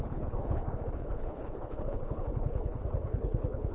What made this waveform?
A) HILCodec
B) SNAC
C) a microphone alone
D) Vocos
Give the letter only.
A